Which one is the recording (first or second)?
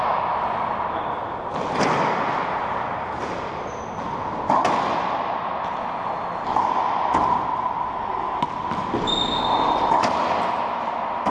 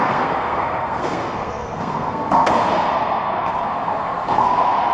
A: first